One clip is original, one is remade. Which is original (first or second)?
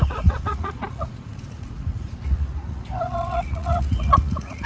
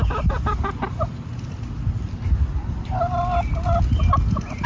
second